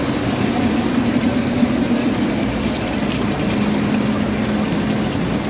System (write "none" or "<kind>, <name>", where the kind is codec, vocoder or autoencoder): none